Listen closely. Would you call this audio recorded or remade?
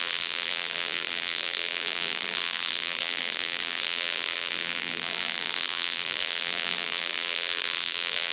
remade